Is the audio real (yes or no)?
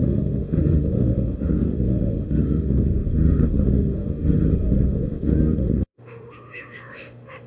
no